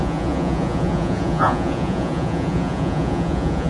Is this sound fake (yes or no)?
yes